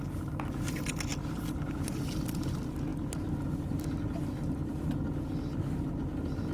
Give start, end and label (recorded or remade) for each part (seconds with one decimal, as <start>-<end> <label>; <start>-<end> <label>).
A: 0.0-6.5 recorded

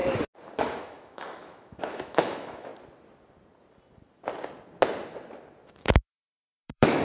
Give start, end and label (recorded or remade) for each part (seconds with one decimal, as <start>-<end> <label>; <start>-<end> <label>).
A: 0.0-0.8 recorded; 0.8-2.7 remade; 2.7-5.7 recorded; 5.7-7.0 remade

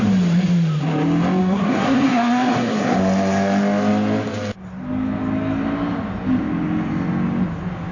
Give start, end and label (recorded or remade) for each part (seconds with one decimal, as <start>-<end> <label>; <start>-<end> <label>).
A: 0.0-1.4 recorded; 1.4-3.0 remade; 3.0-7.9 recorded